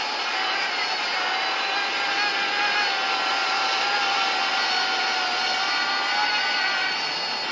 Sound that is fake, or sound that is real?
real